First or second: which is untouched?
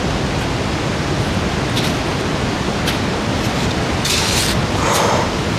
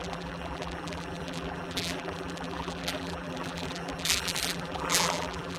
first